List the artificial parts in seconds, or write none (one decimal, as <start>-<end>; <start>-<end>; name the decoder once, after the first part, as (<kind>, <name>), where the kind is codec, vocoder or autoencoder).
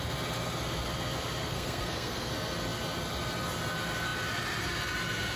1.4-2.3 (codec, SNAC)